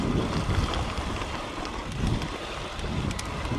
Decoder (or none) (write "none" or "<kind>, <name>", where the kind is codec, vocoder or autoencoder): none